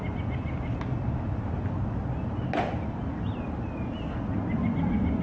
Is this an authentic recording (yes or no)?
yes